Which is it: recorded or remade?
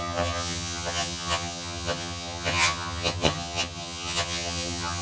remade